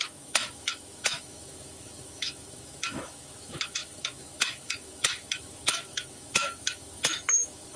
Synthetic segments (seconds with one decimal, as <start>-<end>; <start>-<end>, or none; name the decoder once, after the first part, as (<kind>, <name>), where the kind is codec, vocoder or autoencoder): 0.0-7.8 (autoencoder, DAC-VAE)